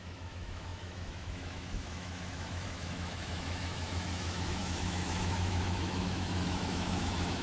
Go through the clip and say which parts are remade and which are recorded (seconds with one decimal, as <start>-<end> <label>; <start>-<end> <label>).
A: 0.0-7.4 remade